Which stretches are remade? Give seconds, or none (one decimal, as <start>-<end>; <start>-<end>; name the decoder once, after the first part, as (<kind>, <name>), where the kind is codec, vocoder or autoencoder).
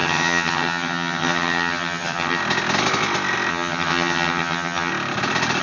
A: 0.0-2.4 (vocoder, HiFi-GAN); 3.5-4.9